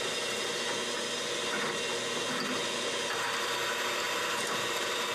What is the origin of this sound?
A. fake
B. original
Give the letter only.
B